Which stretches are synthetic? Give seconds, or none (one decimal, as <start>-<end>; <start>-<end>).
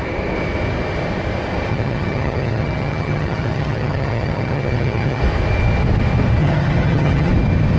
1.7-5.2; 6.4-7.3